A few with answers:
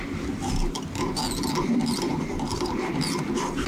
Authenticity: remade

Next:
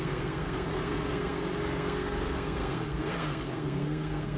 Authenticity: remade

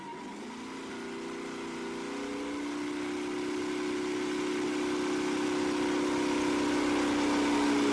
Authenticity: recorded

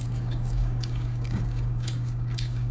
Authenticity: remade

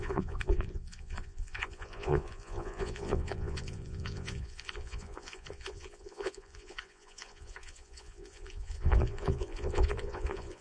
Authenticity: remade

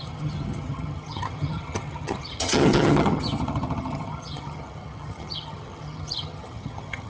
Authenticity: remade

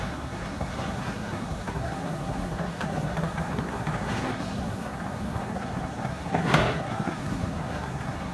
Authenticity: remade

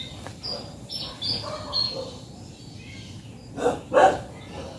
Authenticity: recorded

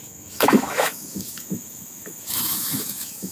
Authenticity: remade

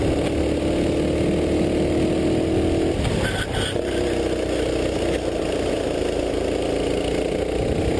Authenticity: recorded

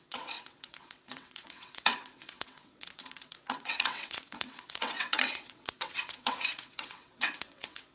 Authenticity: remade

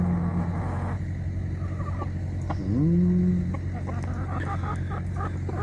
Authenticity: recorded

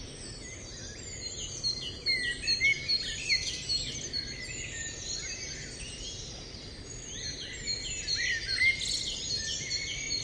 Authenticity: recorded